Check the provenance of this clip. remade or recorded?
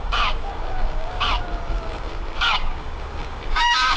remade